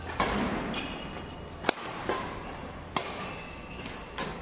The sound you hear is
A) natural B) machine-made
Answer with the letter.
A